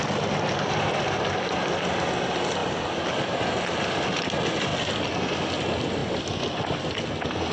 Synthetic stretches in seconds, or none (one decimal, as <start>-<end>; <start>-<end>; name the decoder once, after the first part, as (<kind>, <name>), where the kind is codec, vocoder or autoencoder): none